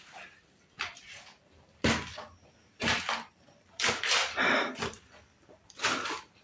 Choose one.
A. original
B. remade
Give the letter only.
B